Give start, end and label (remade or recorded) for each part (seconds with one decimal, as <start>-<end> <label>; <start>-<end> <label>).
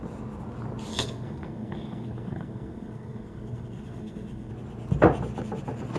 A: 0.0-0.9 recorded; 0.9-4.5 remade; 4.5-6.0 recorded